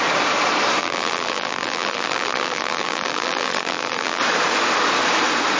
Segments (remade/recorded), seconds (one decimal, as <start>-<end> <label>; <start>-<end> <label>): 0.0-0.8 recorded; 0.8-4.2 remade; 4.2-5.6 recorded